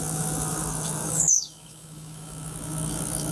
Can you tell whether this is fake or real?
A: fake